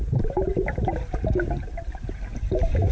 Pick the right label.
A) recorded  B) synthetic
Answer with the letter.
B